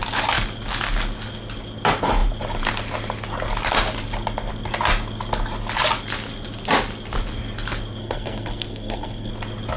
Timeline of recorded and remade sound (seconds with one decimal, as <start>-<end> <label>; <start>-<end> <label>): 0.0-8.0 recorded; 8.0-9.3 remade; 9.3-9.8 recorded

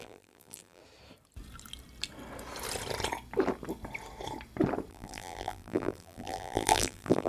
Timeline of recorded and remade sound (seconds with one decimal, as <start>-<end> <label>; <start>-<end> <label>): 0.0-0.8 remade; 0.8-4.9 recorded; 4.9-7.3 remade

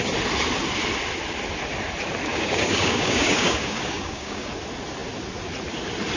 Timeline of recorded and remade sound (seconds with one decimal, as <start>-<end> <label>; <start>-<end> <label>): 0.0-2.3 recorded; 2.3-4.5 remade; 4.5-6.2 recorded

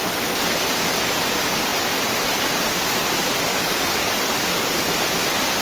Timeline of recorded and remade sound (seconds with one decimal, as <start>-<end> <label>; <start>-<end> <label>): 0.0-3.5 recorded; 3.5-4.1 remade; 4.1-5.6 recorded

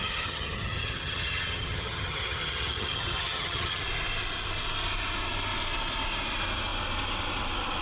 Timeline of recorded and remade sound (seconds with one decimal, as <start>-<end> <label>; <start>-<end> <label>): 0.0-3.8 remade; 3.8-7.8 recorded